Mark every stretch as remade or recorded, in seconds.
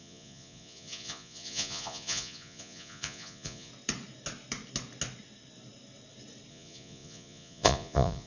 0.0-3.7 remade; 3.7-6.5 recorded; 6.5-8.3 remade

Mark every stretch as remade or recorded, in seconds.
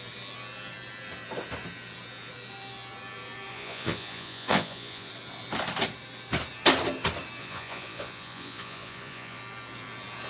0.0-3.5 recorded; 3.5-5.1 remade; 5.1-7.4 recorded; 7.4-9.4 remade; 9.4-10.3 recorded